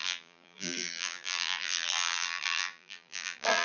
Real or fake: fake